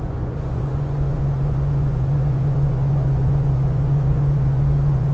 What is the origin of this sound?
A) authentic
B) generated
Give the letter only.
B